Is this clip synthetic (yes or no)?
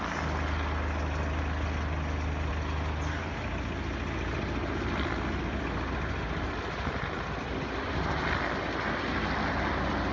no